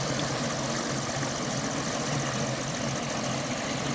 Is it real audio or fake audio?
real